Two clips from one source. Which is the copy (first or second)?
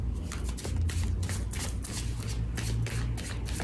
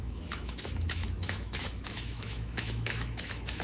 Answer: second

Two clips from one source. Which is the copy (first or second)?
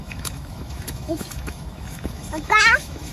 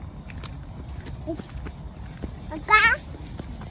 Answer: first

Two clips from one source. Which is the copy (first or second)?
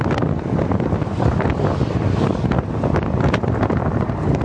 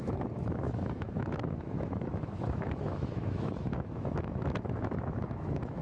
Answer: second